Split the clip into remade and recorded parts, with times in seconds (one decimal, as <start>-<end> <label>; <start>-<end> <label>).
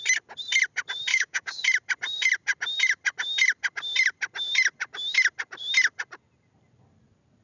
0.0-1.1 recorded; 1.1-1.6 remade; 1.6-7.4 recorded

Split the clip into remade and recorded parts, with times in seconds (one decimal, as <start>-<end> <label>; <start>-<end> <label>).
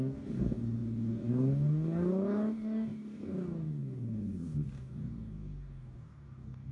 0.0-6.7 remade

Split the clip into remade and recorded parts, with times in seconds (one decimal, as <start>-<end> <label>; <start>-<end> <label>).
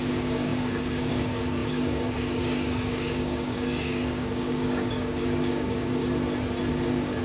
0.0-6.0 remade; 6.0-6.7 recorded; 6.7-7.2 remade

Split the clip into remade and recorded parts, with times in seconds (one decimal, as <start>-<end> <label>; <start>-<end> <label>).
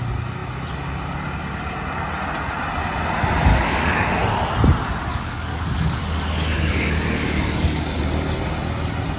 0.0-3.5 recorded; 3.5-4.1 remade; 4.1-5.1 recorded; 5.1-8.0 remade; 8.0-9.2 recorded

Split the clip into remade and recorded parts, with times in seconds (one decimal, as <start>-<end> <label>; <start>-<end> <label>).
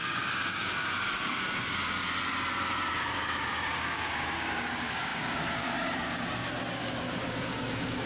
0.0-2.0 remade; 2.0-2.9 recorded; 2.9-8.1 remade